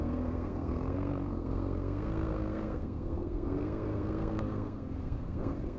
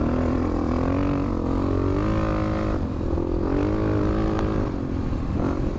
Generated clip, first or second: first